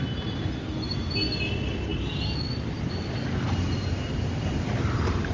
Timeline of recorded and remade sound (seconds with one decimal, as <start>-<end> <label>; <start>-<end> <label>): 0.0-5.3 recorded